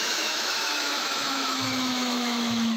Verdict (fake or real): fake